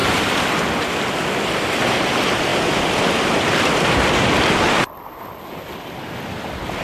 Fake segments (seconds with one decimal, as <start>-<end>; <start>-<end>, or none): 0.0-2.1